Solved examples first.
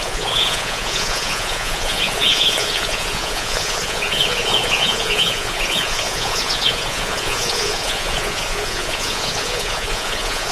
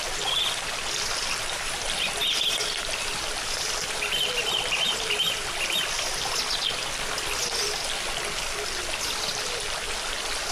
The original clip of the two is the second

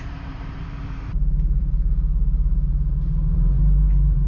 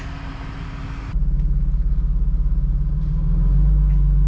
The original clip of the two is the second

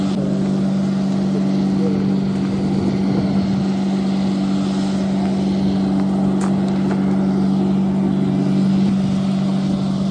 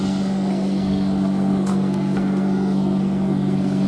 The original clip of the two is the first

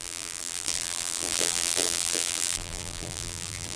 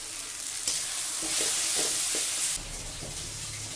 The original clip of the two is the second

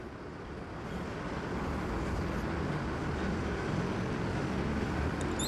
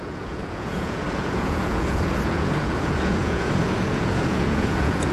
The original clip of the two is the first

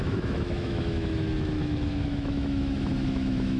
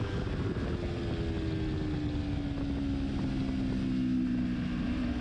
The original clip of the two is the second